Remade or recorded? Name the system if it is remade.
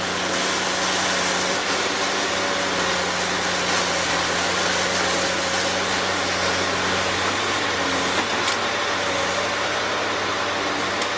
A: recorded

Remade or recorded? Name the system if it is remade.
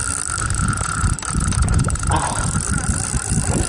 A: recorded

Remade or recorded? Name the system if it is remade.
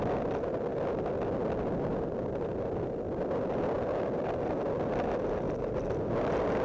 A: recorded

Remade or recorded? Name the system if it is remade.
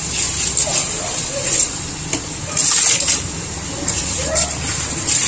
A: recorded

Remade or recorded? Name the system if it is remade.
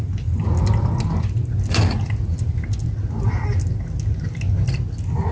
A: recorded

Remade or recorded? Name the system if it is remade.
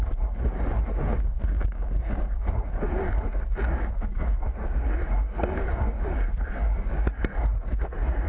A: recorded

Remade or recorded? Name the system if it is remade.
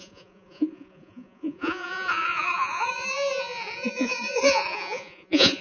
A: remade, vocoder, Vocos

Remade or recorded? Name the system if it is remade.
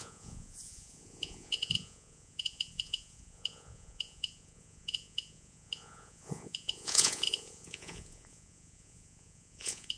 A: remade, vocoder, Vocos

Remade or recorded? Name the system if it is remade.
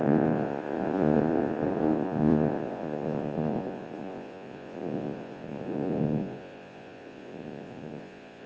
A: remade, vocoder, Vocos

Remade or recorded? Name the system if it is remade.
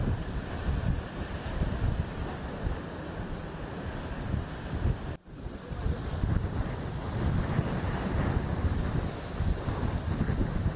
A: recorded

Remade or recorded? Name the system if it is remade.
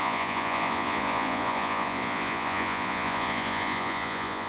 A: remade, vocoder, Vocos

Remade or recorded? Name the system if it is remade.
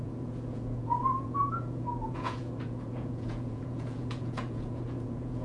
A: remade, vocoder, Vocos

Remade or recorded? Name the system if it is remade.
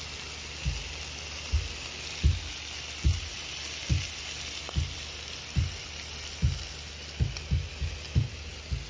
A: recorded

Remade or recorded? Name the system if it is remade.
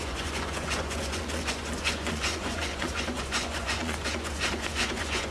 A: remade, vocoder, Vocos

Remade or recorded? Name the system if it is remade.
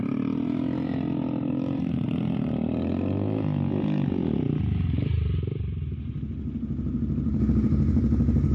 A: recorded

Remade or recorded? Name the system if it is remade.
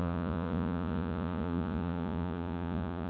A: remade, vocoder, Vocos